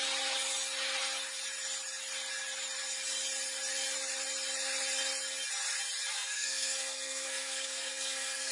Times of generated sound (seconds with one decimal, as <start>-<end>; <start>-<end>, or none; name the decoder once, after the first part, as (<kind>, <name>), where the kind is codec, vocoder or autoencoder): 6.1-8.5 (codec, SNAC)